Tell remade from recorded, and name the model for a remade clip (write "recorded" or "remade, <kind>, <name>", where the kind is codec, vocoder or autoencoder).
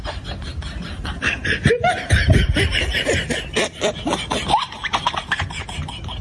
remade, vocoder, BigVGAN v2